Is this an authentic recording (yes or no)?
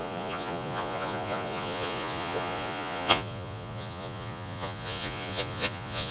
no